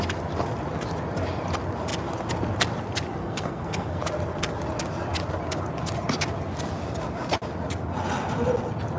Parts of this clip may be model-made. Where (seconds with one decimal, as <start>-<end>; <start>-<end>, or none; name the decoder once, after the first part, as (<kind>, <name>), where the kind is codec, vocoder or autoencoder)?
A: 3.2-4.0 (codec, SNAC)